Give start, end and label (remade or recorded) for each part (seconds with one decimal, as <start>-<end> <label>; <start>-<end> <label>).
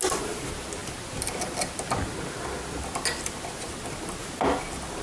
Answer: 0.0-5.0 recorded